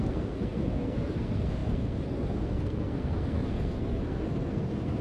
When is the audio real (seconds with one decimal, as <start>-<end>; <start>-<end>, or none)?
none